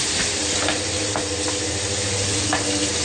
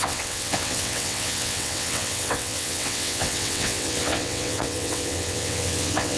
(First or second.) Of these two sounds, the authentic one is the first